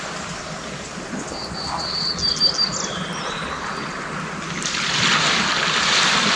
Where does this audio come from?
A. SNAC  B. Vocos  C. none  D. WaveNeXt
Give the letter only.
C